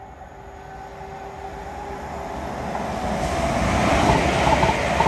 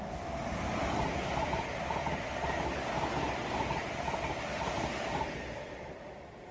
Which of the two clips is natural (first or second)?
first